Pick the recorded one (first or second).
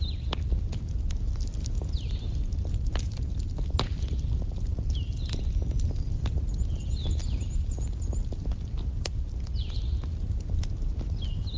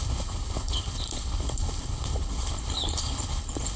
first